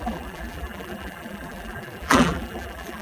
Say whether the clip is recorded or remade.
remade